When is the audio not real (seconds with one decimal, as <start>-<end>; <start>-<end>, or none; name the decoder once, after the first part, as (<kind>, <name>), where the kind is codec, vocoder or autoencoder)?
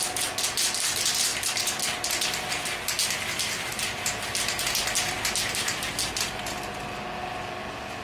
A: none